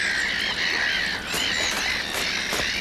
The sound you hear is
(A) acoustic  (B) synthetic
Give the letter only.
A